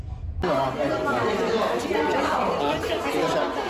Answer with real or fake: real